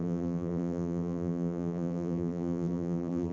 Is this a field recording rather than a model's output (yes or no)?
no